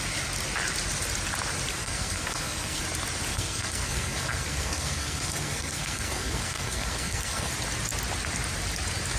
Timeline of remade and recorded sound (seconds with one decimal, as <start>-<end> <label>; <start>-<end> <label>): 0.0-1.8 recorded; 1.8-2.8 remade; 2.8-3.3 recorded; 3.3-7.5 remade; 7.5-9.2 recorded